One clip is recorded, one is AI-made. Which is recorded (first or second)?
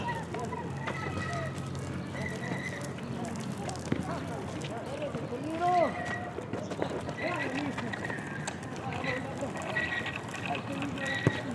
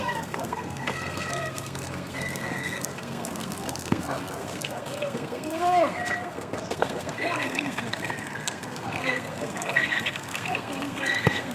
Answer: first